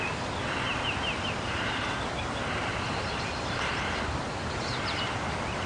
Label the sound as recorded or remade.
recorded